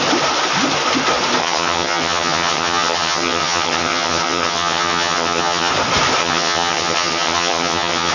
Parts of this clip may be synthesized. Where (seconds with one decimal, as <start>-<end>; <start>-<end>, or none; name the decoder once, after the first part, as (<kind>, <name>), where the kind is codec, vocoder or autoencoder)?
1.4-5.7 (vocoder, HiFi-GAN); 6.2-8.1